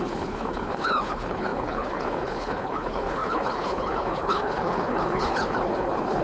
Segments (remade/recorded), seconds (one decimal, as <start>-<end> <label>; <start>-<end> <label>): 0.0-6.2 remade